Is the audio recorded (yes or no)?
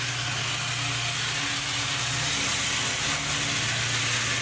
yes